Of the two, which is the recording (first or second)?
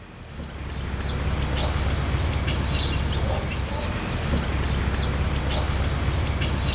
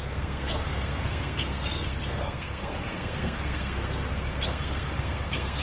first